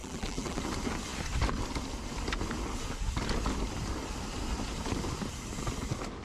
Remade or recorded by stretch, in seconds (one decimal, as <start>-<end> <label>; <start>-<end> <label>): 0.0-0.6 remade; 0.6-6.2 recorded